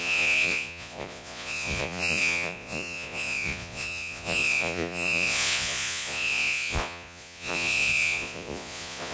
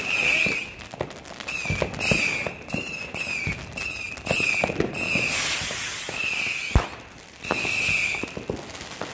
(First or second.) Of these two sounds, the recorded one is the second